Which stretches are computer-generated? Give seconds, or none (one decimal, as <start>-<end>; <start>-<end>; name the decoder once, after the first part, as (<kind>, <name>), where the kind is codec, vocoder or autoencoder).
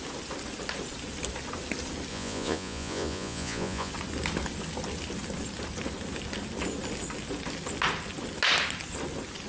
2.1-3.9 (vocoder, Vocos)